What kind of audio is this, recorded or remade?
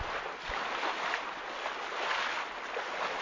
recorded